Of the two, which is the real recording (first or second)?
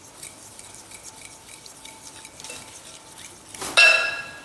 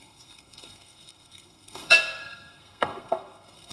first